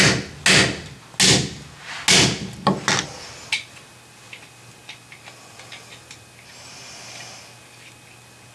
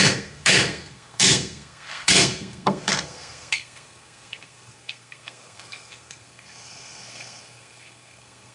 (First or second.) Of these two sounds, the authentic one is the first